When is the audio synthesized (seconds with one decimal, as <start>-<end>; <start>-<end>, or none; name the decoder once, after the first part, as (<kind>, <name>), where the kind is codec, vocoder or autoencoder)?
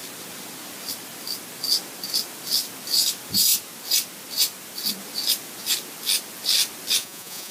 7.0-7.5 (vocoder, Vocos)